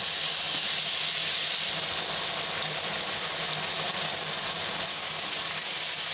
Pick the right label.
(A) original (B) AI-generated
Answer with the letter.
A